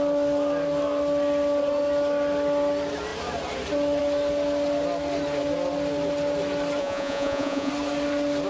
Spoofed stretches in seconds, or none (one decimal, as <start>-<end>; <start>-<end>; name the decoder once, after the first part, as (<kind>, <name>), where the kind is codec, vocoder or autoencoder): 6.8-7.7 (vocoder, Vocos)